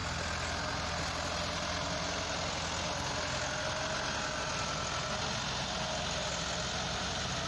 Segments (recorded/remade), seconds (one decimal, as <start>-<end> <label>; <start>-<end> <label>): 0.0-7.5 recorded